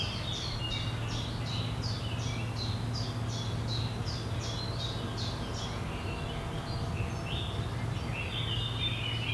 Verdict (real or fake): real